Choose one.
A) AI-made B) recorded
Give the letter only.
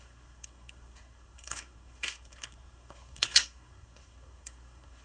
A